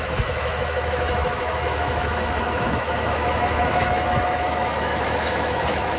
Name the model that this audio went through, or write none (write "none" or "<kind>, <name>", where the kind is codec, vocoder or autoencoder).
autoencoder, DAC-VAE